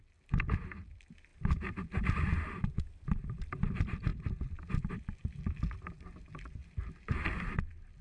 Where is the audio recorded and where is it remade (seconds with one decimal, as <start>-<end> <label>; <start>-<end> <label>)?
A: 0.0-8.0 recorded